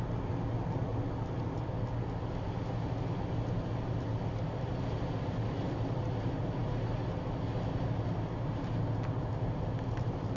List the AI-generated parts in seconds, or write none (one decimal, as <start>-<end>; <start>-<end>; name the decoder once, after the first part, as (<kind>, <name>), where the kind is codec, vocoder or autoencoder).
none